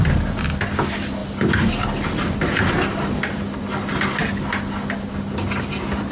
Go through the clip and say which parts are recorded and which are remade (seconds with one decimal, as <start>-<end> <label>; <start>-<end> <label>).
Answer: 0.0-6.1 recorded